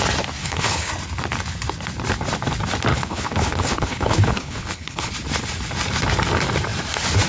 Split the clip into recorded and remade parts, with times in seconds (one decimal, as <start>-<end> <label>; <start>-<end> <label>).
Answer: 0.0-0.4 recorded; 0.4-0.9 remade; 0.9-2.9 recorded; 2.9-5.1 remade; 5.1-7.3 recorded